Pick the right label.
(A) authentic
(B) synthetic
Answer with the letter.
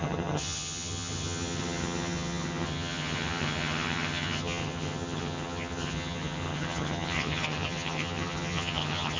B